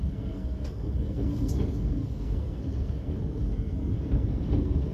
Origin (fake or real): fake